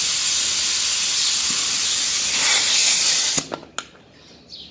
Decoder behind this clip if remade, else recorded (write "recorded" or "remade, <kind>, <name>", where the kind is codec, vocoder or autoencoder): recorded